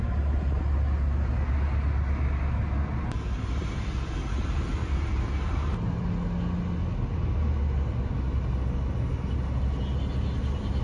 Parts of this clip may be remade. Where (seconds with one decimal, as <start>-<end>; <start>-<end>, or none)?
none

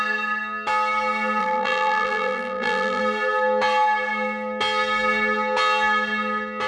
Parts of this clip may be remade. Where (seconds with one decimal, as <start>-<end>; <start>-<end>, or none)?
1.4-3.0